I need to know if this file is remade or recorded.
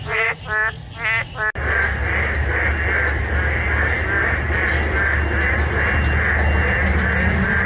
recorded